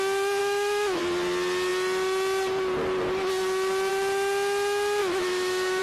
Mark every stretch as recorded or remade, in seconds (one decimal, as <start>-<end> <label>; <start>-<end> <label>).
0.0-0.4 recorded; 0.4-1.0 remade; 1.0-5.0 recorded; 5.0-5.8 remade